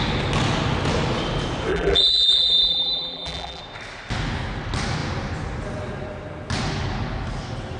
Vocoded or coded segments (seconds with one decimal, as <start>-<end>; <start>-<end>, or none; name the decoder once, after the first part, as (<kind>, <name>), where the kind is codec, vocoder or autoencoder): 1.7-3.6 (vocoder, BigVGAN v2)